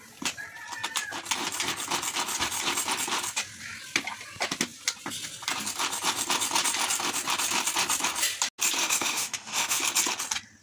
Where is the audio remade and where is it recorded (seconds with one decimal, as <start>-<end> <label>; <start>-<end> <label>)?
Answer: 0.0-8.8 recorded; 8.8-9.8 remade; 9.8-10.6 recorded